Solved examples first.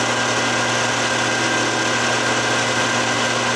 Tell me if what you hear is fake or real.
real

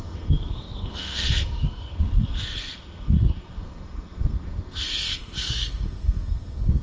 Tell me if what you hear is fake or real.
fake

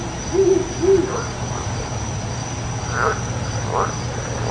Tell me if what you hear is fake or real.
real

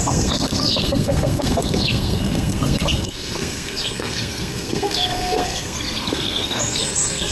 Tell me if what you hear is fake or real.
fake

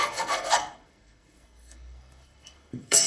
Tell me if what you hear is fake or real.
fake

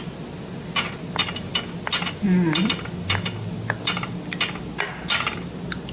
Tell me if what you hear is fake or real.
real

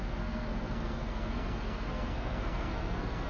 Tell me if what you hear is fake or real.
fake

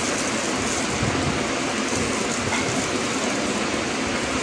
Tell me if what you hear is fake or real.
real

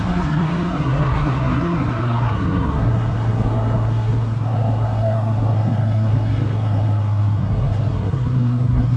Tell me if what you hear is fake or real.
fake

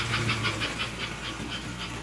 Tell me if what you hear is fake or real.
real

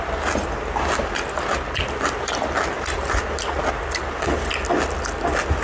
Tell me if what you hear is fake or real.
real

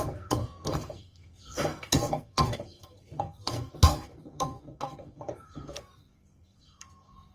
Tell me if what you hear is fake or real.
fake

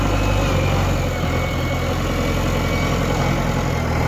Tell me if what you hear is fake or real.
real